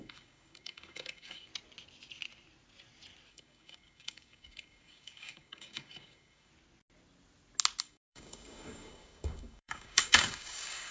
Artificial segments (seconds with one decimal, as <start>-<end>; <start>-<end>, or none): 0.0-1.5; 3.3-6.5; 7.8-10.9